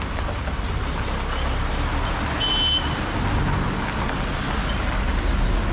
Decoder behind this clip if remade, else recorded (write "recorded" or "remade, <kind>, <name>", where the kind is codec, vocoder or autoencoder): recorded